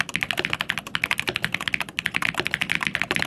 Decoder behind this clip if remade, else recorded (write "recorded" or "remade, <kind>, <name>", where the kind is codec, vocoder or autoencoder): recorded